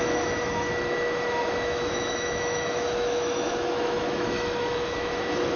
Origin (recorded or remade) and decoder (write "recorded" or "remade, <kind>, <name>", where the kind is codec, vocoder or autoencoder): remade, autoencoder, DAC-VAE